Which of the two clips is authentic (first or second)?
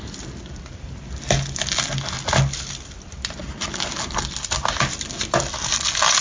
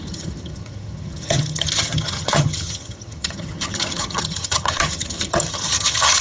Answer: first